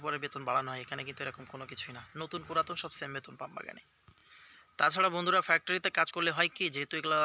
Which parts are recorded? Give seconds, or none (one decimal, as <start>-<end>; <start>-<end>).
0.0-2.1; 3.8-7.2